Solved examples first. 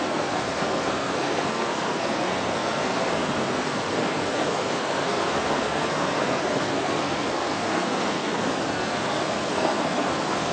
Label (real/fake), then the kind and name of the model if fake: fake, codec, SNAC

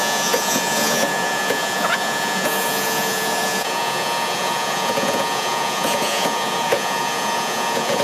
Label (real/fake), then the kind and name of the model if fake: fake, vocoder, Vocos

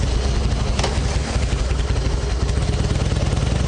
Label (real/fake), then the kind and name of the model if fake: real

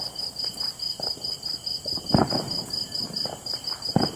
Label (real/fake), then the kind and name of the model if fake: real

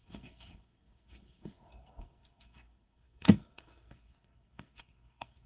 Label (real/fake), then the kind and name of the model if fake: fake, codec, SNAC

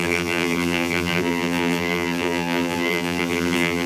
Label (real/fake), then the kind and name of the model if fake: fake, vocoder, BigVGAN v2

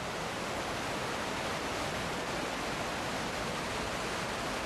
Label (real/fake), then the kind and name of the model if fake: real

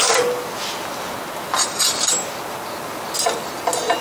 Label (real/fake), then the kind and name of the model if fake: real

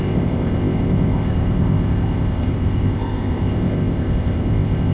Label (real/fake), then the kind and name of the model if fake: fake, codec, ZipCodec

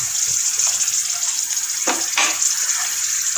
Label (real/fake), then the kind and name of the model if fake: real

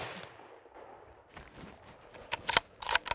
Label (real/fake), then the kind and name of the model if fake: real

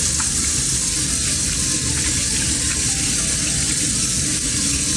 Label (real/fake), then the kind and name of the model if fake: real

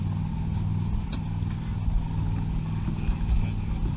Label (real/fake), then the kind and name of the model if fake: real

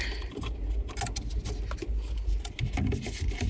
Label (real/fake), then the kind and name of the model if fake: real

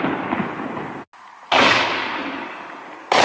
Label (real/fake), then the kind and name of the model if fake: real